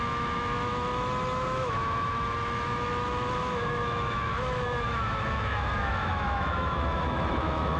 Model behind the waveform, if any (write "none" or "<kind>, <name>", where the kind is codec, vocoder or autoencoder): autoencoder, DAC-VAE